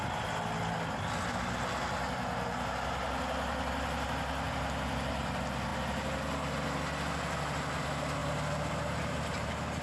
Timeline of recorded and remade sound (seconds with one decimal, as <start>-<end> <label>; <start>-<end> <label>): 0.0-9.8 recorded